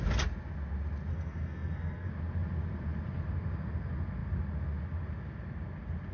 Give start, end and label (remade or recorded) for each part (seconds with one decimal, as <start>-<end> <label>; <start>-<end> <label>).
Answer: 0.0-1.1 recorded; 1.1-2.1 remade; 2.1-6.1 recorded